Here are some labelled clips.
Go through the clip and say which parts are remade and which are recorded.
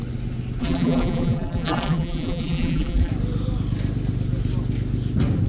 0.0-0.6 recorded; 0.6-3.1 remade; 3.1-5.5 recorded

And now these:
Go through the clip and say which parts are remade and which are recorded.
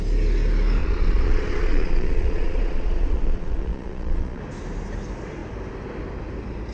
0.0-0.8 recorded; 0.8-4.4 remade; 4.4-6.7 recorded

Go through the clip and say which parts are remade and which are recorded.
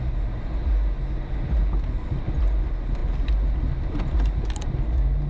0.0-5.3 recorded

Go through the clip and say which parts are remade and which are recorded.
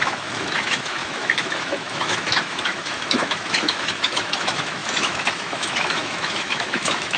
0.0-7.2 remade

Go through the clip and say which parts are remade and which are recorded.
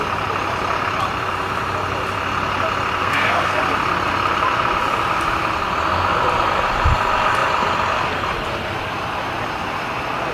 0.0-3.0 recorded; 3.0-3.6 remade; 3.6-10.3 recorded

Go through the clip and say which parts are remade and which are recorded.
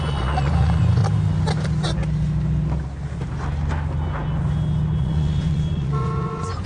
0.0-1.0 remade; 1.0-5.0 recorded; 5.0-6.7 remade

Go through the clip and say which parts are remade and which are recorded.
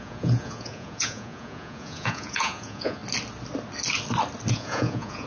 0.0-3.0 remade; 3.0-4.5 recorded; 4.5-5.3 remade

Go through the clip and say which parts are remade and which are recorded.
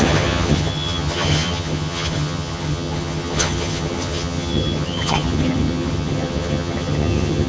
0.0-7.5 remade